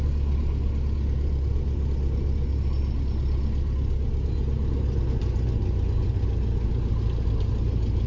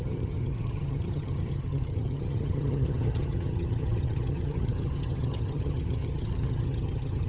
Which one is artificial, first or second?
second